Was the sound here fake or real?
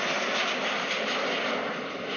real